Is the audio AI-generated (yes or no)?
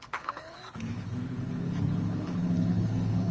yes